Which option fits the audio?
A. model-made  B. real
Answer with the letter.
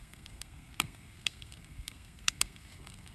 A